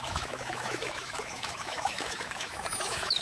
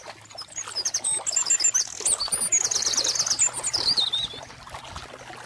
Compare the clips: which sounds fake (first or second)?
first